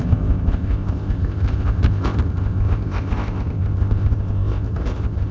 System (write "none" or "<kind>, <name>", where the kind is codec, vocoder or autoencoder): codec, ZipCodec